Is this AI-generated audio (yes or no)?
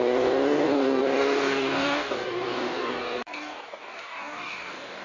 yes